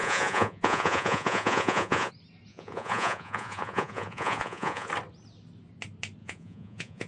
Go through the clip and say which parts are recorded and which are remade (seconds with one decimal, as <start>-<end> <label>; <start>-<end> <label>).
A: 0.0-2.1 remade; 2.1-2.5 recorded; 2.5-4.9 remade; 4.9-6.2 recorded; 6.2-7.1 remade